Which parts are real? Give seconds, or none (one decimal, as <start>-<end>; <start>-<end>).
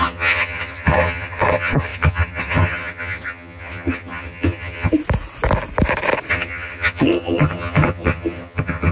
4.9-6.3